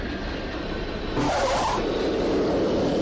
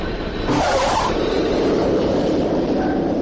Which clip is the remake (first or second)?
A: second